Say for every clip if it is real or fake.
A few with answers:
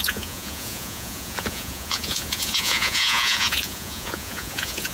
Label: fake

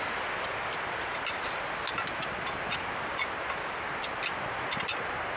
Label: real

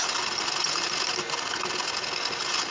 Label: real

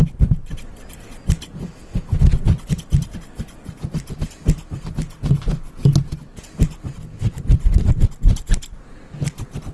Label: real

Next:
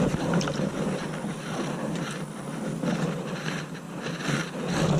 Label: real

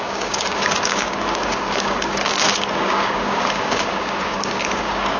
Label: fake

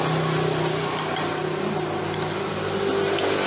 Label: real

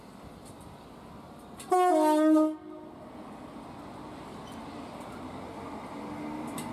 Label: real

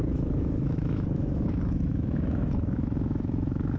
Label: fake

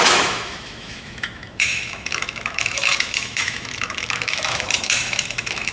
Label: fake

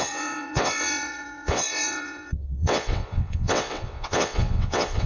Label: fake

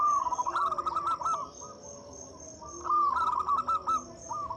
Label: real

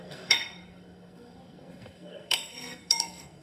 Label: fake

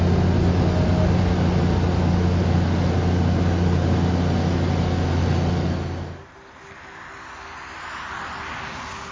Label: real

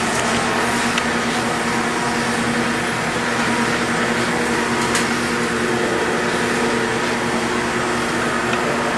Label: real